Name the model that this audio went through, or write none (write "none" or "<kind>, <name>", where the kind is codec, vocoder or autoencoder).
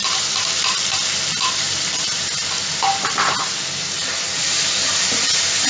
vocoder, BigVGAN v2